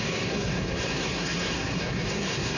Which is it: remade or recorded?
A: remade